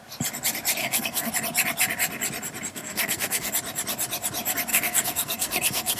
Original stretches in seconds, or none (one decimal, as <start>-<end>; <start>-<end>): 0.0-0.8; 1.3-2.7; 3.5-4.7